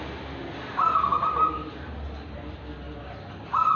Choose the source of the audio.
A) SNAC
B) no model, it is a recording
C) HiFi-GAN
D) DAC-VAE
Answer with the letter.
B